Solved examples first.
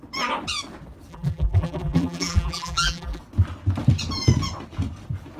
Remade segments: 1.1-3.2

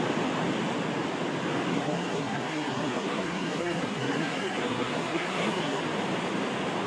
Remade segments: 1.7-5.8

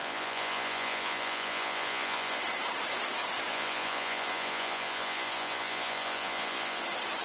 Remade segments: 0.0-2.4; 3.5-6.8